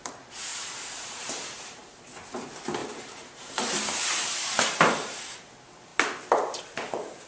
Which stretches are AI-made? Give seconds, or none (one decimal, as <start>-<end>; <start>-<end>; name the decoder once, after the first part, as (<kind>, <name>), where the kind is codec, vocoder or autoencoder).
0.5-2.1 (vocoder, BigVGAN v2); 2.8-5.2